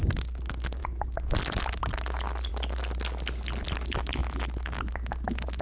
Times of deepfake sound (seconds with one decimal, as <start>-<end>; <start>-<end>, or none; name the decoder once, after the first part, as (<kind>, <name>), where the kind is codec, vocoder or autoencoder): none